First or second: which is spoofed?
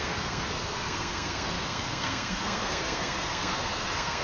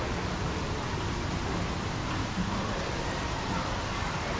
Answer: first